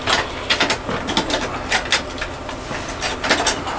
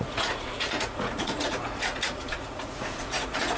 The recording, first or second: first